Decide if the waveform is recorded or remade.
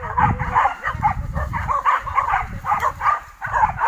remade